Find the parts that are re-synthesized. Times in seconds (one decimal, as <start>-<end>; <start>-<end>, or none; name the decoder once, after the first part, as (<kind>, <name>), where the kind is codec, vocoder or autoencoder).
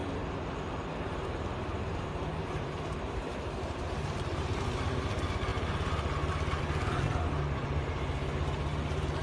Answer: 1.8-4.6 (vocoder, BigVGAN v2)